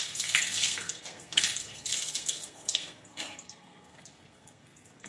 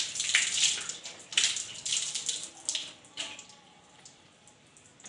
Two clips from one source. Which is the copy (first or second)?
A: first